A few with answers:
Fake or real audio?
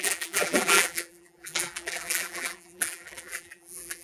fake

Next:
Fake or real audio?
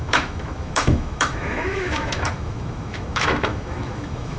fake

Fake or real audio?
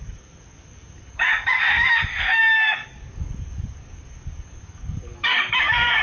fake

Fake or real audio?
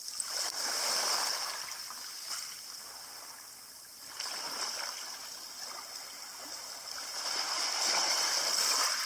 fake